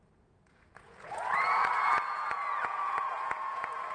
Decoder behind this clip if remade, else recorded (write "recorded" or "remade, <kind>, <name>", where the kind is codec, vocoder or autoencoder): remade, vocoder, Vocos